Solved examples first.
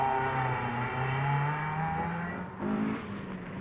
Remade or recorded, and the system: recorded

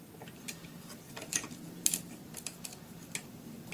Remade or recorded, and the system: remade, vocoder, BigVGAN v2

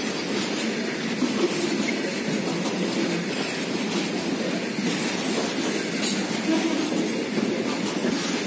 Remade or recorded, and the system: recorded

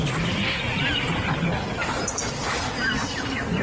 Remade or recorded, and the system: recorded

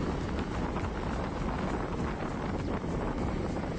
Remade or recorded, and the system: recorded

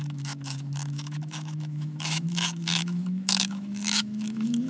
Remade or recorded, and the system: remade, autoencoder, DAC-VAE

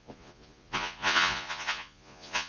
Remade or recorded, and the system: remade, vocoder, Vocos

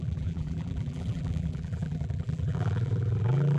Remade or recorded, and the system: remade, vocoder, BigVGAN v2